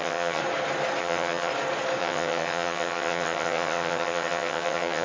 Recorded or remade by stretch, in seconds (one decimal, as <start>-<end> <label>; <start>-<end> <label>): 0.0-0.4 remade; 0.4-1.0 recorded; 1.0-1.5 remade; 1.5-2.0 recorded; 2.0-5.0 remade